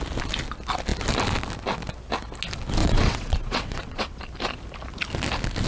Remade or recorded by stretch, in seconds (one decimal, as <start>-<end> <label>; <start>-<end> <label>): 0.0-2.8 recorded; 2.8-4.2 remade; 4.2-5.7 recorded